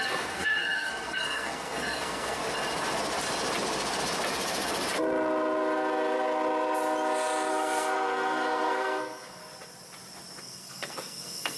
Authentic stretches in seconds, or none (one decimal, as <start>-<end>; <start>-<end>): 2.4-7.5; 9.4-10.4